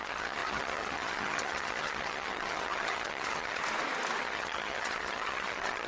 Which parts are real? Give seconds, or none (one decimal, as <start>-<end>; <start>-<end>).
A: 3.6-4.2